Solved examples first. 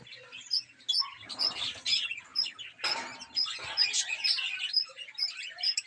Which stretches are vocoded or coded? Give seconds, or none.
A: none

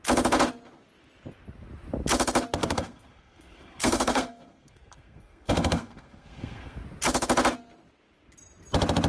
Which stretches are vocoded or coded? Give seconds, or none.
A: 2.6-6.8

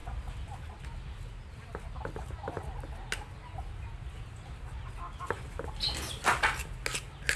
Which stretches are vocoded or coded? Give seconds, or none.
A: none

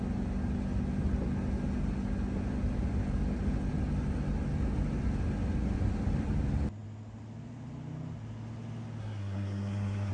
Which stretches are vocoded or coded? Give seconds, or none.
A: 9.0-10.1

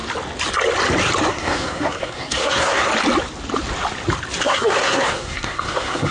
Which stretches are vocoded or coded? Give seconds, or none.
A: 1.3-2.9; 4.4-6.1

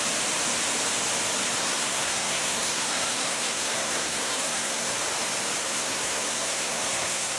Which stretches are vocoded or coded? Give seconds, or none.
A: 1.6-4.9; 5.6-7.4